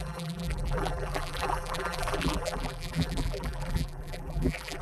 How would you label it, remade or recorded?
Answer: remade